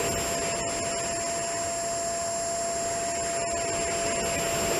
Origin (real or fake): real